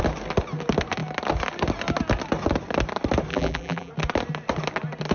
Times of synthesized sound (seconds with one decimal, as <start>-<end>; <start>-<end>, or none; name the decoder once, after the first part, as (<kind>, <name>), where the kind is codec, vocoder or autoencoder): 3.3-3.9 (vocoder, BigVGAN v2)